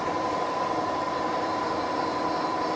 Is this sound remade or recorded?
recorded